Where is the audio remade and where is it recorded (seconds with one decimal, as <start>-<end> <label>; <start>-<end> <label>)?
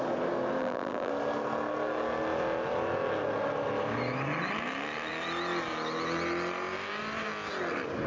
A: 0.0-0.6 recorded; 0.6-1.1 remade; 1.1-8.1 recorded